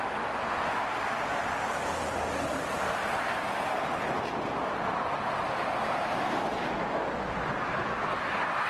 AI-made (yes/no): no